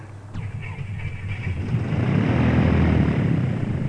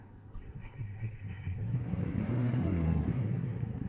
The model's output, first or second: second